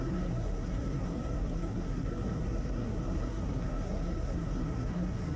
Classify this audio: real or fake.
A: fake